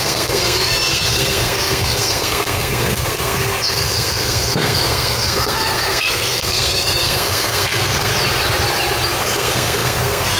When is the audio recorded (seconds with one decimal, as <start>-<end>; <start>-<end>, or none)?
8.1-9.2